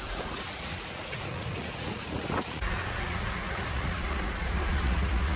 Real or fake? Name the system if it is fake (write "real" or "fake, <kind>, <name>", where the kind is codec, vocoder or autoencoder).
fake, vocoder, Vocos